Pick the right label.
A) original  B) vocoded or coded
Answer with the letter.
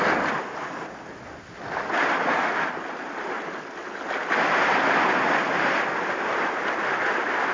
A